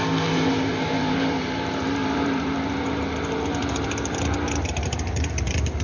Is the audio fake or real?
fake